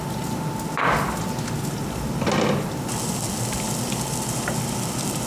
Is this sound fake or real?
real